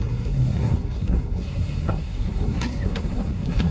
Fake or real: fake